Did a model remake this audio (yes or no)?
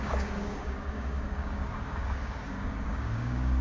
yes